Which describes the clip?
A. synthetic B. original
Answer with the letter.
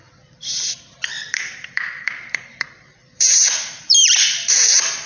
A